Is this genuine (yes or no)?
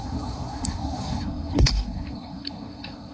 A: no